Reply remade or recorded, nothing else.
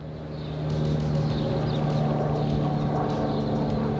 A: recorded